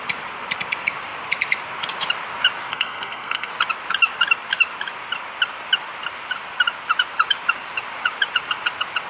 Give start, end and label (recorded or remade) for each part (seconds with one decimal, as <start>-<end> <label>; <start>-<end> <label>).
0.0-2.7 recorded; 2.7-3.5 remade; 3.5-9.1 recorded